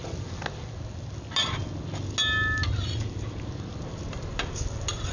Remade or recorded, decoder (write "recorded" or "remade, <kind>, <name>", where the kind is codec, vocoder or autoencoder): recorded